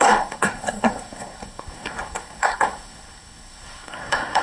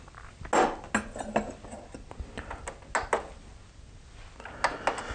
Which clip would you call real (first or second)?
second